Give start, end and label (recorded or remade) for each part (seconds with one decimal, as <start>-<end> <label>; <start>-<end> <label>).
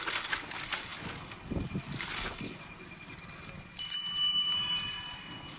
0.0-5.6 recorded